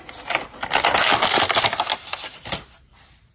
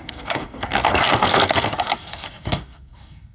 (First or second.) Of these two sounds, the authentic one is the first